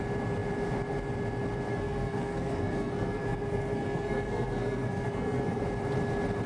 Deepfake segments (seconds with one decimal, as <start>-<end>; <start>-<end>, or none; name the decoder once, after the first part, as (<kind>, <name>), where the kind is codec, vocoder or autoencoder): 1.7-5.6 (codec, SNAC)